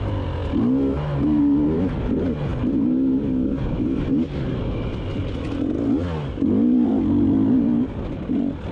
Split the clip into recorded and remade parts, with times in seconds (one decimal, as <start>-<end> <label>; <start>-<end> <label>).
0.0-8.7 recorded